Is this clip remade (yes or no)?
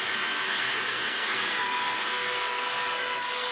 yes